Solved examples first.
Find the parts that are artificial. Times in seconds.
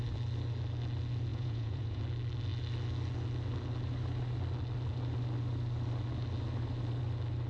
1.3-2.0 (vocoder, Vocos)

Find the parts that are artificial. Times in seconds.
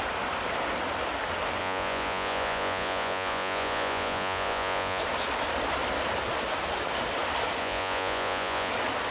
1.6-5.0 (vocoder, Vocos); 7.6-8.7